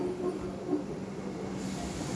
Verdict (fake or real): real